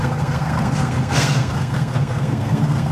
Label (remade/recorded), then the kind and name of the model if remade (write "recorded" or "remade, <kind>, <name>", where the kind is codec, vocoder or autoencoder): remade, codec, SNAC